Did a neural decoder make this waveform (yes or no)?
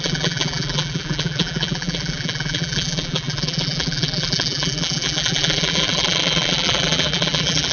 yes